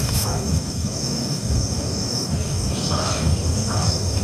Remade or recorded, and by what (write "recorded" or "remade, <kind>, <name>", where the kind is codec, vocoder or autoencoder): remade, codec, DAC